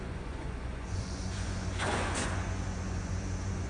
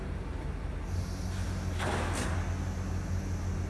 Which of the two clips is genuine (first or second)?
second